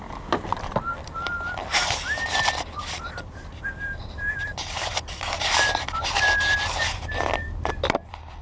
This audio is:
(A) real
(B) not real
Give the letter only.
B